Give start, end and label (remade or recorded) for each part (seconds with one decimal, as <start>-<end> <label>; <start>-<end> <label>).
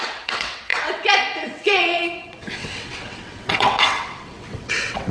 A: 0.0-5.1 remade